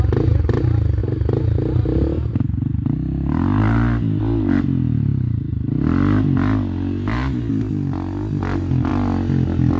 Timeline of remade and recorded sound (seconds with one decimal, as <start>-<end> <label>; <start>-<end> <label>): 0.0-9.8 recorded